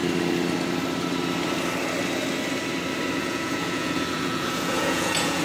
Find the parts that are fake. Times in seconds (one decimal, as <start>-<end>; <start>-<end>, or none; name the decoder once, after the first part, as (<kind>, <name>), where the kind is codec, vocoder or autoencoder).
3.2-5.4 (vocoder, Vocos)